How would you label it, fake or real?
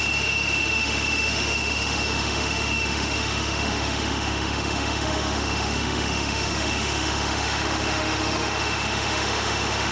fake